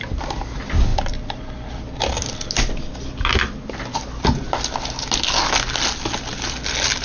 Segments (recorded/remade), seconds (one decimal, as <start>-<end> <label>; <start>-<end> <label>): 0.0-0.9 recorded; 0.9-2.0 remade; 2.0-7.0 recorded